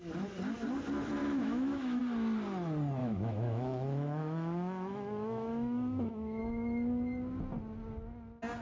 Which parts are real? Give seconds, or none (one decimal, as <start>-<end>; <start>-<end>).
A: 0.0-1.2; 2.0-3.0; 6.4-8.6